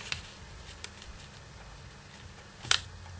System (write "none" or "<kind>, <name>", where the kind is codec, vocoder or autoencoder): none